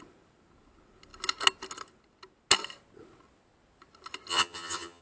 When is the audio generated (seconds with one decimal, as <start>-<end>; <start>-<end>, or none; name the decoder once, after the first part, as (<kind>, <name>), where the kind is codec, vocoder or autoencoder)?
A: 4.3-5.0 (vocoder, HiFi-GAN)

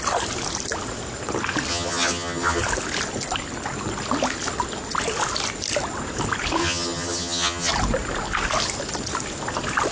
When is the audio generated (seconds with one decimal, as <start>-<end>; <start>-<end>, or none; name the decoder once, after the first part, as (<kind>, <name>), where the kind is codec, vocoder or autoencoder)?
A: 1.7-2.6 (vocoder, HiFi-GAN); 6.6-7.7

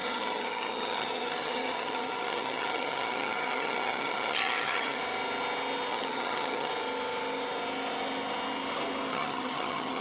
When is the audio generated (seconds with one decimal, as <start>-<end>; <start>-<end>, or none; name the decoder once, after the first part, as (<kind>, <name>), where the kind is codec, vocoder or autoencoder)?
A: 0.0-5.0 (vocoder, HiFi-GAN); 5.9-6.7; 9.1-10.0

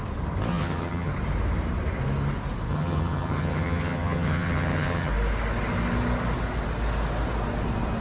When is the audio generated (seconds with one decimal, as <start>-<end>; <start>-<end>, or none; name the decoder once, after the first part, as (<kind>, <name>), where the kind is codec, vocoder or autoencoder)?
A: 0.5-1.1 (vocoder, HiFi-GAN); 2.7-5.1

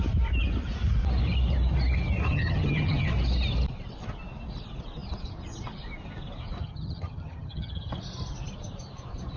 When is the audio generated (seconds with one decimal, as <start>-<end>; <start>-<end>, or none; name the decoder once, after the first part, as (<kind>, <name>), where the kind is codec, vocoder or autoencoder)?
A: 2.3-3.1 (vocoder, HiFi-GAN); 6.6-7.9

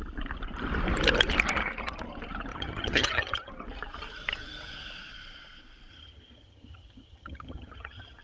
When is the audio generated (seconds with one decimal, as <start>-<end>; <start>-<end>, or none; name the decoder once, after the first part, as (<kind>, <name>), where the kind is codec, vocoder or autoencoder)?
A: 2.5-3.5 (vocoder, HiFi-GAN); 5.9-8.2

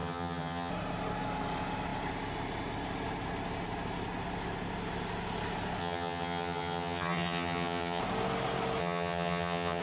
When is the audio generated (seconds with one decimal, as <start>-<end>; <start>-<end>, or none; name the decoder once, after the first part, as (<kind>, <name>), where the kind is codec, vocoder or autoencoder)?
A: 0.0-0.7 (vocoder, HiFi-GAN); 5.8-8.0; 8.8-9.8